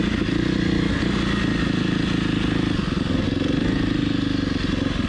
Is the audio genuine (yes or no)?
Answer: yes